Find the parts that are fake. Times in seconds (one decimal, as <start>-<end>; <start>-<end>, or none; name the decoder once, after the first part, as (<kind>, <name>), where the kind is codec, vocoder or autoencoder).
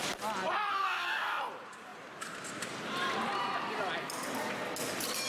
0.7-1.4 (codec, DAC)